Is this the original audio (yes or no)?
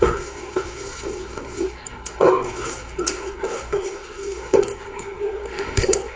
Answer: no